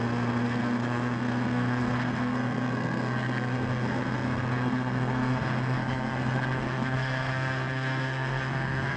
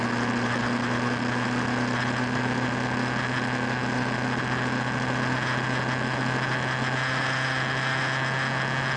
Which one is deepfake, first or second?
first